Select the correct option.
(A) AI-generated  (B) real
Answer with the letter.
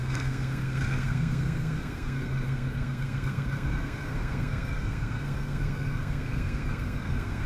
A